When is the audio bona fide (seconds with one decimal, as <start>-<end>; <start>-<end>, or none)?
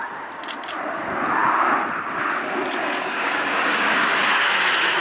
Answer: 0.0-2.8; 4.6-5.0